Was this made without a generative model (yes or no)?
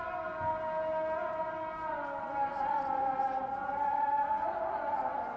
yes